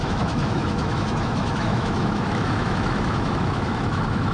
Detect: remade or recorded remade